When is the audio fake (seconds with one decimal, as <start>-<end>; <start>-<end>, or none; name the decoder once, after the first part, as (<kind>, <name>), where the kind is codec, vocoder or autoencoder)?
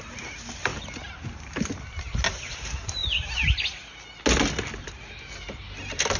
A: none